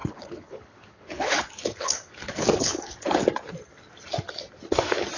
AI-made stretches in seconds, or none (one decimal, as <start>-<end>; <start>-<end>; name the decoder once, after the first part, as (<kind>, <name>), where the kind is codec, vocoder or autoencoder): 0.0-3.1 (codec, HILCodec)